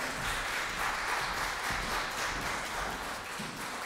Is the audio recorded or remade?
recorded